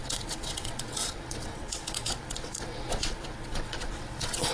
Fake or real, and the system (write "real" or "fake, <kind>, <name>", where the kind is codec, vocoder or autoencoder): fake, vocoder, WaveNeXt